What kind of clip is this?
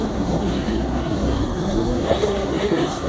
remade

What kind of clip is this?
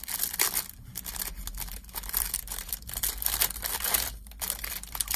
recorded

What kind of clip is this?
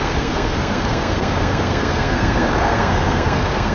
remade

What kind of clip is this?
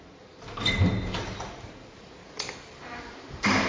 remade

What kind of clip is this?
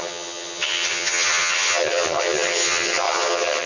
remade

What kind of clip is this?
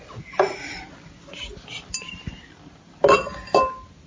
recorded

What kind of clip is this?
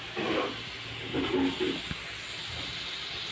recorded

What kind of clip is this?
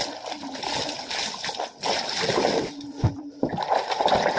recorded